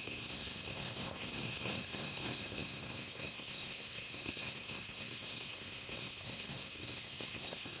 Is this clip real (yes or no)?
no